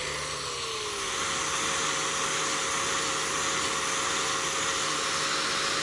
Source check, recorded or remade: recorded